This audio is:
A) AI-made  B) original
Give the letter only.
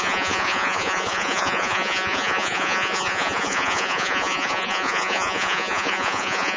A